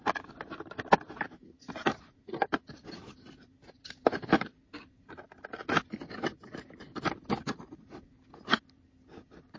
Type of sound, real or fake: real